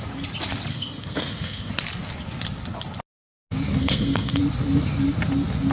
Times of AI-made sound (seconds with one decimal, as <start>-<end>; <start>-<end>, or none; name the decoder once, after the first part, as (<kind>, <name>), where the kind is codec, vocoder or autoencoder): 0.7-1.7 (codec, SNAC); 3.8-4.4